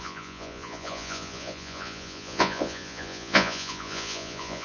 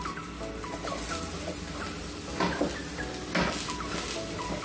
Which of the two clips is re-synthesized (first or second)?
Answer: first